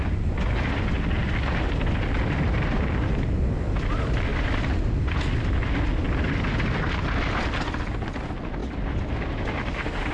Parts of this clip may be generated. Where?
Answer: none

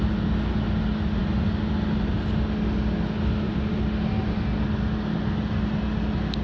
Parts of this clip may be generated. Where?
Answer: none

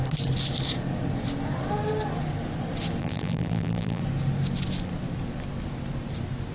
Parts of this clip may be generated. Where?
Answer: 3.0-4.0

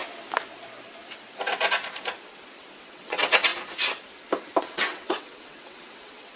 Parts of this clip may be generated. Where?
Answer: 2.8-3.5; 4.6-6.4

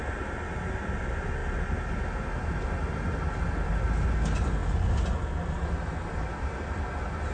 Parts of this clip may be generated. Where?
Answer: none

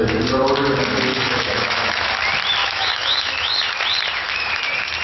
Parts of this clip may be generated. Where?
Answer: 1.1-2.0; 2.6-3.7